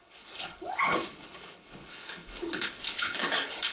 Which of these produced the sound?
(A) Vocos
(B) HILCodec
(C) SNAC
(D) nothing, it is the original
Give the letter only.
B